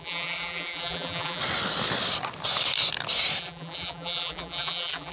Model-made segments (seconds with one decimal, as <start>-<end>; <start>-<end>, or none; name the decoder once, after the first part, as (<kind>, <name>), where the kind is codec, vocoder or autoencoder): 0.0-1.4 (vocoder, BigVGAN v2); 3.4-5.1